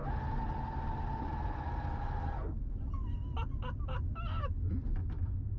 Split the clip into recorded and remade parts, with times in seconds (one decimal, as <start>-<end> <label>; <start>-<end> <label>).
0.0-5.6 recorded